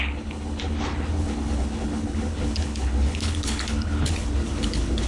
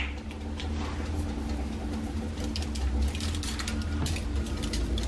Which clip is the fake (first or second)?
first